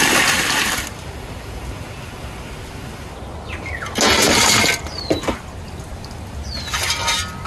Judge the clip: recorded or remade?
recorded